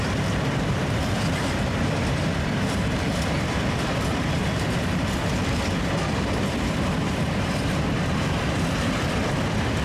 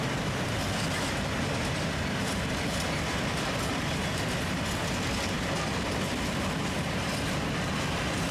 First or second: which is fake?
first